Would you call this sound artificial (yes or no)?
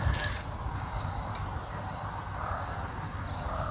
no